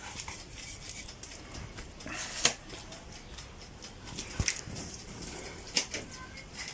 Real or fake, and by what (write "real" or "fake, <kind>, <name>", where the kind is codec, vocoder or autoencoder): real